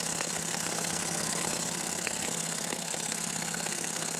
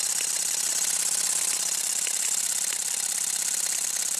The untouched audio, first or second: second